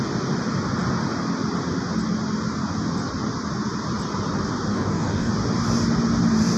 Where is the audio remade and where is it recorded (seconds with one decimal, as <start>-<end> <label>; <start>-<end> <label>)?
0.0-4.7 recorded; 4.7-5.3 remade; 5.3-6.6 recorded